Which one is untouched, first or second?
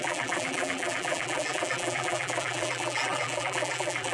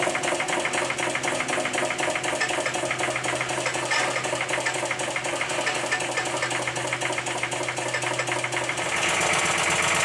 second